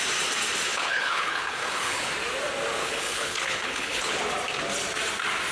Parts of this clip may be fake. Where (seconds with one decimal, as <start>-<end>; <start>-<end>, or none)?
0.7-2.1; 2.8-4.2